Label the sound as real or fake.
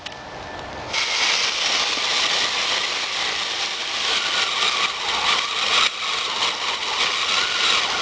real